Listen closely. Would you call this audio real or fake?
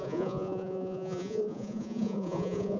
fake